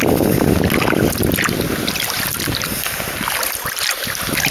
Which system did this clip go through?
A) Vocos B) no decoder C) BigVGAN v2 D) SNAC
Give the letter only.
B